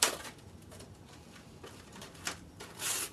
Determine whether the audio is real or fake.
fake